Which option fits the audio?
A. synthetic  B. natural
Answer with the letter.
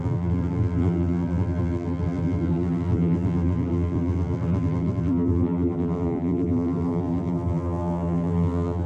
A